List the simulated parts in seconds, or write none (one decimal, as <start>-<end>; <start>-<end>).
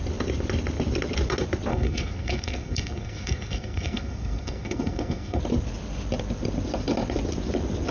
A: 1.7-5.4